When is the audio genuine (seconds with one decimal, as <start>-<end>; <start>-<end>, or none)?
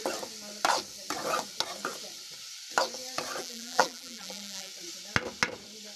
0.0-3.4; 4.7-6.0